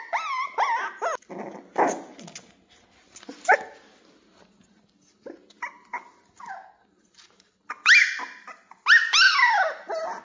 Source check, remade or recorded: recorded